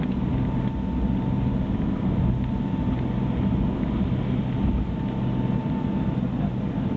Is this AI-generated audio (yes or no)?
no